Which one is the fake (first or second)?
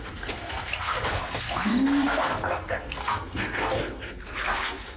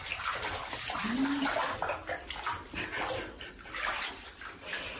first